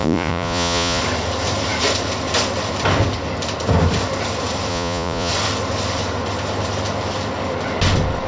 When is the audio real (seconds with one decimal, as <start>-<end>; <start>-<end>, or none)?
1.0-4.7; 5.3-8.3